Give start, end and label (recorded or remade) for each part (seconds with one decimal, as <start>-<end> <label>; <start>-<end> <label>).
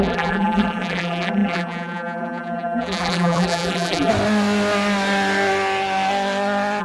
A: 0.0-4.1 remade; 4.1-6.8 recorded